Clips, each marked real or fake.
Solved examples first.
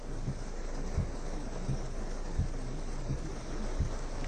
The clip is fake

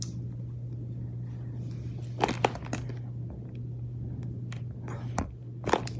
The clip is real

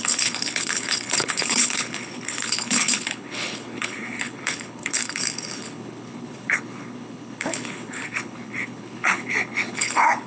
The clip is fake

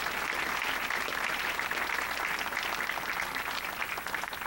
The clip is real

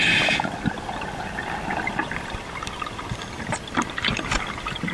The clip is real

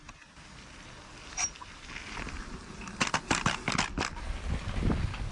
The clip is real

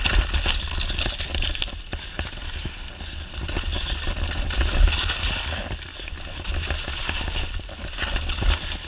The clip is real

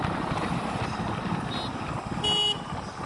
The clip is real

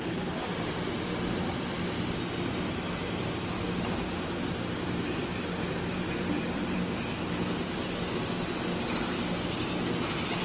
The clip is real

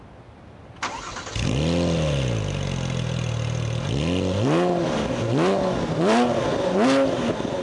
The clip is real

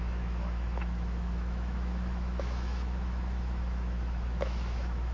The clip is fake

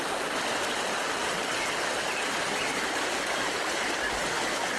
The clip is real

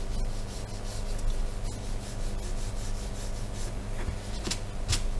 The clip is real